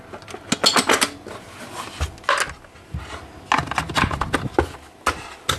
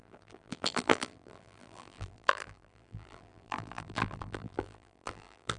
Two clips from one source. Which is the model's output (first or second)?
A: second